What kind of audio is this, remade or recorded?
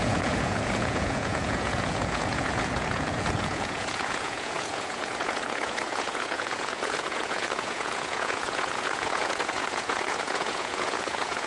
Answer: remade